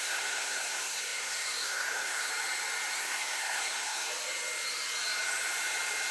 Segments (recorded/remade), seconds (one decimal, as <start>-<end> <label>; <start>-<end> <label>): 0.0-2.3 remade; 2.3-2.9 recorded; 2.9-4.1 remade; 4.1-6.1 recorded